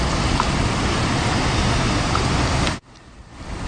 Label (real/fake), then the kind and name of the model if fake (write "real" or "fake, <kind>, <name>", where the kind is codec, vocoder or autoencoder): real